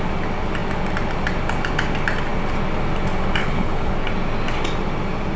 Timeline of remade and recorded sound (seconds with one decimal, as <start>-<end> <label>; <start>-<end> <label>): 0.0-3.4 recorded; 3.4-3.9 remade; 3.9-5.4 recorded